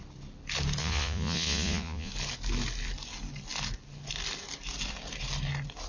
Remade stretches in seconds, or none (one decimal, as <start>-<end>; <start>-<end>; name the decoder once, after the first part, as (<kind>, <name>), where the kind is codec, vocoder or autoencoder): 0.8-2.1 (vocoder, Vocos)